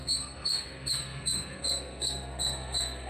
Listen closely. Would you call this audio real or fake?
fake